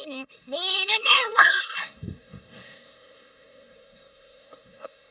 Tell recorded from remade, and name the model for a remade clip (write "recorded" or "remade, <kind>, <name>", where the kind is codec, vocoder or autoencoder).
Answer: remade, codec, SNAC